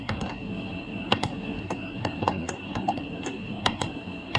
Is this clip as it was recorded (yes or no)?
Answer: no